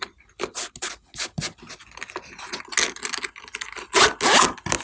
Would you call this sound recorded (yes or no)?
yes